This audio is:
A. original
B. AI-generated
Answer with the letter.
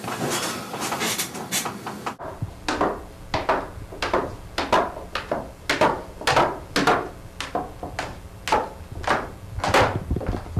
A